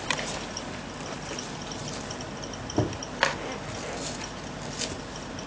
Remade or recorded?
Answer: recorded